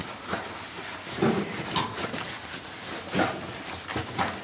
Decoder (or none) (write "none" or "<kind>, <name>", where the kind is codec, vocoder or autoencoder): none